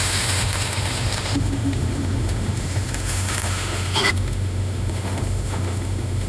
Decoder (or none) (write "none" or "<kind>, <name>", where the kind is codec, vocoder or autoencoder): autoencoder, DAC-VAE